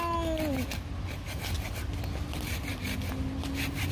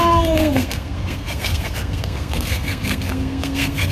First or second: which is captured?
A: first